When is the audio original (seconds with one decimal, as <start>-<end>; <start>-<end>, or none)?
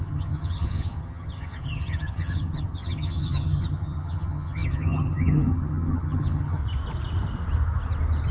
6.6-8.3